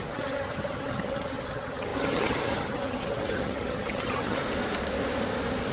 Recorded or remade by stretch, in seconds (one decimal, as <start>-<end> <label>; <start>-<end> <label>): 0.0-4.4 remade; 4.4-5.7 recorded